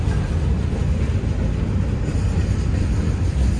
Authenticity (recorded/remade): recorded